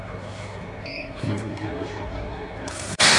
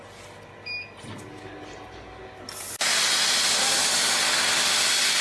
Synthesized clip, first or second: first